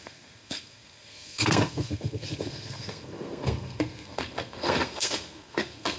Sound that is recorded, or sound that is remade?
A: remade